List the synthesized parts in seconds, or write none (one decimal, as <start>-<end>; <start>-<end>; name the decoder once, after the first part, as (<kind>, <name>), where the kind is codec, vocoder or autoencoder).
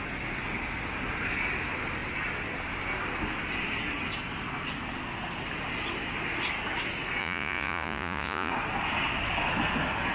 7.2-8.5 (vocoder, Vocos)